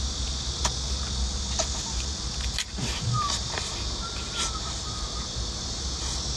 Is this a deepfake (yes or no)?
yes